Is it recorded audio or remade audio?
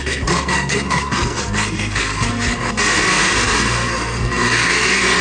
remade